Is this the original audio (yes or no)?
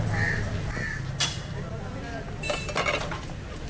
yes